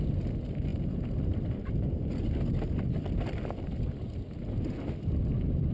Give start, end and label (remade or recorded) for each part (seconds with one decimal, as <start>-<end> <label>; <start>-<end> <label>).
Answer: 0.0-5.7 recorded